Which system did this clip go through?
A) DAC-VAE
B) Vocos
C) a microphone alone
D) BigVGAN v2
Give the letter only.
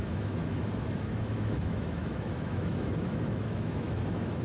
A